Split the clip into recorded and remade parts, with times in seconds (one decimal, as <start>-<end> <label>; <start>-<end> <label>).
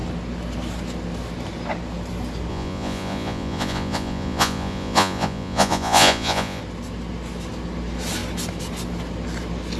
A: 0.0-2.5 recorded; 2.5-6.6 remade; 6.6-9.8 recorded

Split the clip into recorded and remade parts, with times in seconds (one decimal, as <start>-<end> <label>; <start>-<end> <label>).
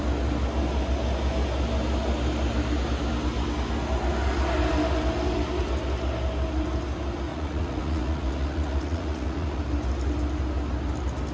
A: 0.0-7.3 recorded; 7.3-9.6 remade; 9.6-11.3 recorded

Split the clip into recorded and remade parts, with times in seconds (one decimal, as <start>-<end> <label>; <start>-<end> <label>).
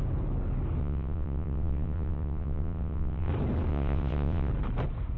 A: 0.0-0.8 recorded; 0.8-3.3 remade; 3.3-3.7 recorded; 3.7-4.5 remade; 4.5-5.2 recorded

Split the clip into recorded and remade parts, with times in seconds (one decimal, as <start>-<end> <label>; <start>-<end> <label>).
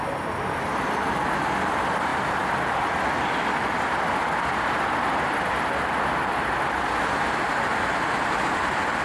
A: 0.0-9.0 recorded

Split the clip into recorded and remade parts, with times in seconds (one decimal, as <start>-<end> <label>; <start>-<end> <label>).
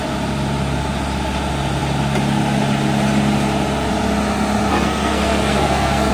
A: 0.0-4.7 recorded; 4.7-6.1 remade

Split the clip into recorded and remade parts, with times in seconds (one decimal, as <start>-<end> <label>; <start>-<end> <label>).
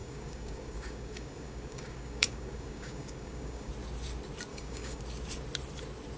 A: 0.0-3.7 remade; 3.7-4.5 recorded; 4.5-5.0 remade; 5.0-6.2 recorded